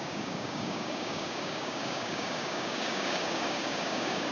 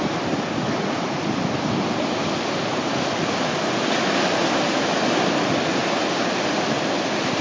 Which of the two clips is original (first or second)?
second